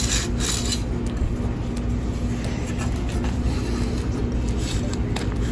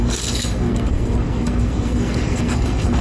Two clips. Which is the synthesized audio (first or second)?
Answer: second